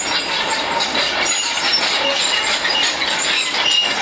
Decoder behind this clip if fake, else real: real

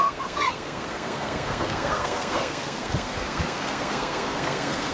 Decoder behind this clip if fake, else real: fake, codec, SNAC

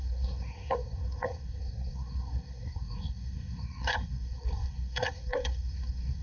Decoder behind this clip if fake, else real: fake, codec, SNAC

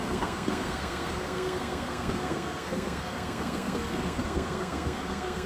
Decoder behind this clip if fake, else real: fake, codec, SNAC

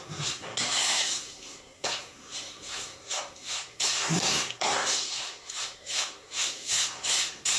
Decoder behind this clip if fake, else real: fake, codec, SNAC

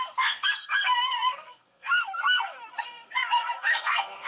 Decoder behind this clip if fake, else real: fake, codec, SNAC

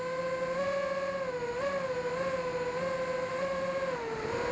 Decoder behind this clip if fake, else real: real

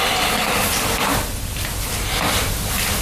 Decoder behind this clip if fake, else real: real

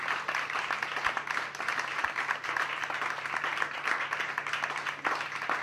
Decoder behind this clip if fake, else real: real